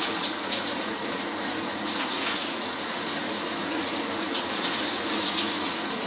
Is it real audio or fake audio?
fake